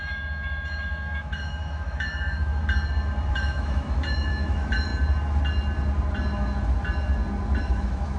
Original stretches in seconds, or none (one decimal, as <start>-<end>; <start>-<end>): 2.6-3.3; 4.9-7.6